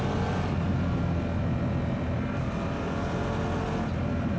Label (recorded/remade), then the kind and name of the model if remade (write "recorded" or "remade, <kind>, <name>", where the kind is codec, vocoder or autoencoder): recorded